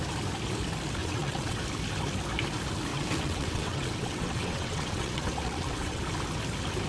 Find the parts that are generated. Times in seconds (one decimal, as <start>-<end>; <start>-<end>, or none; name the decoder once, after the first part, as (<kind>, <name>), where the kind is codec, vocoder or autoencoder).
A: 1.0-1.6 (vocoder, WaveNeXt); 2.9-6.0